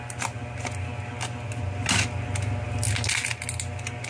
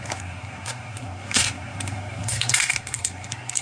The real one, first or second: first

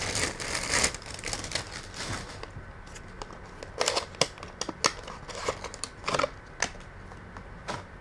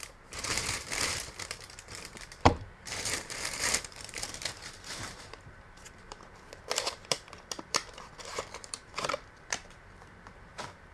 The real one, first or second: first